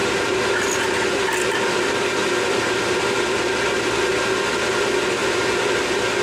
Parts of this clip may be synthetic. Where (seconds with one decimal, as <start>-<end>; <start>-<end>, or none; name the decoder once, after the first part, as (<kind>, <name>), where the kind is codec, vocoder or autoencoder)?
none